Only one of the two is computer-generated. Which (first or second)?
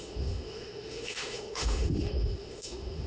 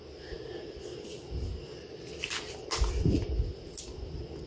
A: first